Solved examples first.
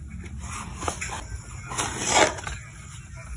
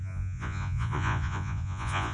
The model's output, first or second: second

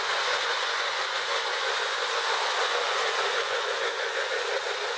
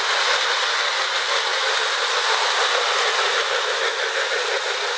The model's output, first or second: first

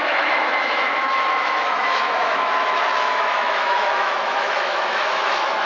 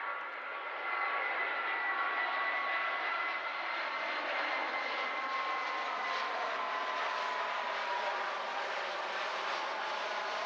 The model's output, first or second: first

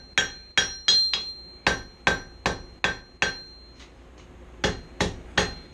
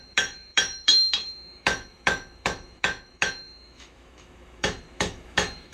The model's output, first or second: second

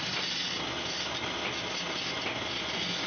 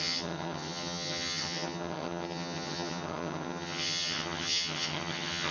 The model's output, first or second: second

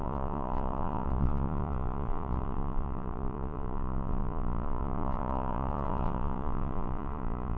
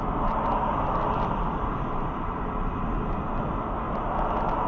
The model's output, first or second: first